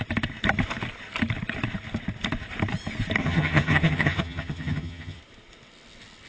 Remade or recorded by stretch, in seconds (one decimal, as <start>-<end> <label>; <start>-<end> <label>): 0.0-3.2 recorded; 3.2-5.2 remade; 5.2-6.3 recorded

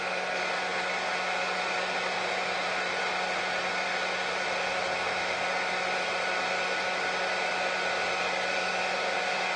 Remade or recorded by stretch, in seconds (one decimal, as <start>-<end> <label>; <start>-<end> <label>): 0.0-9.6 recorded

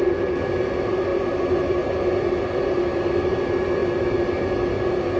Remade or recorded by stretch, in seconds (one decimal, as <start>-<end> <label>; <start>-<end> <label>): 0.0-5.2 recorded

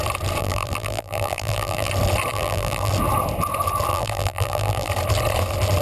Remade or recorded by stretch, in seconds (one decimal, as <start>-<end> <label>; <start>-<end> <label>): 0.0-0.4 recorded; 0.4-1.9 remade; 1.9-2.3 recorded; 2.3-2.9 remade; 2.9-3.9 recorded; 3.9-4.9 remade; 4.9-5.8 recorded

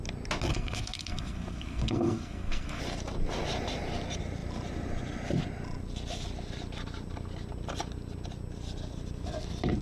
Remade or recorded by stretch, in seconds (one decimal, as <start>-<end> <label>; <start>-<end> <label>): 0.0-0.5 recorded; 0.5-2.8 remade; 2.8-9.8 recorded

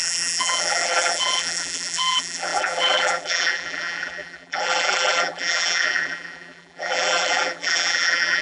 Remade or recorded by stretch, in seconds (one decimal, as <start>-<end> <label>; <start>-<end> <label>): 0.0-8.4 remade

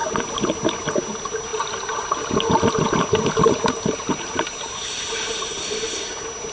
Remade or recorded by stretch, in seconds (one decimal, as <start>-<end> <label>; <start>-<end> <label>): 0.0-6.5 recorded

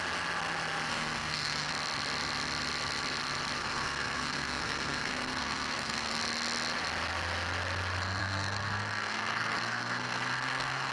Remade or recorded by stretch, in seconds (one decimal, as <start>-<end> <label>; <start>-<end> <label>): 0.0-0.9 recorded; 0.9-1.7 remade; 1.7-3.6 recorded; 3.6-6.2 remade; 6.2-8.2 recorded; 8.2-10.9 remade